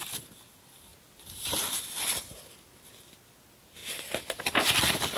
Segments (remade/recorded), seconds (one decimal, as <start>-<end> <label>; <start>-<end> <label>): 0.0-5.2 recorded